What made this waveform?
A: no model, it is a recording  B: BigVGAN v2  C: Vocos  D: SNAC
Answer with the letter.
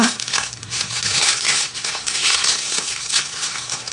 D